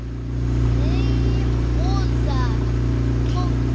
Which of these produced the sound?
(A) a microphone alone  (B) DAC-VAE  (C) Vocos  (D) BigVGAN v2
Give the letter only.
A